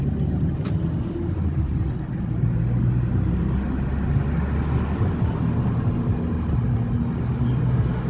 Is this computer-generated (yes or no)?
no